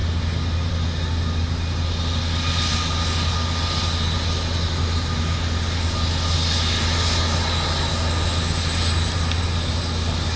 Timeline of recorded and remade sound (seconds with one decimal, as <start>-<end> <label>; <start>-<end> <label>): 0.0-10.4 recorded